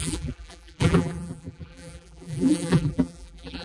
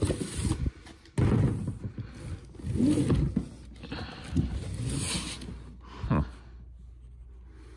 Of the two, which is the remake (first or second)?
first